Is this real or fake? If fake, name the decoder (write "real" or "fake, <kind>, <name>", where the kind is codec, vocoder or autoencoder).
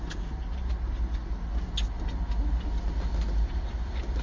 real